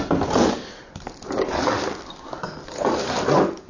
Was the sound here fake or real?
real